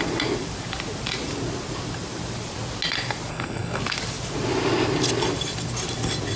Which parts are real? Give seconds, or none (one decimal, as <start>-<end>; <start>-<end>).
0.0-3.3; 3.8-6.4